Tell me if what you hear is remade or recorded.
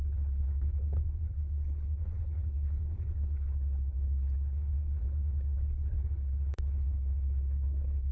remade